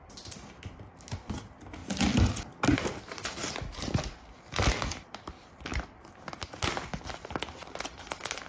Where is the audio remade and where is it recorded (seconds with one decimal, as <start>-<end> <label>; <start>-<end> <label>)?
0.0-8.5 recorded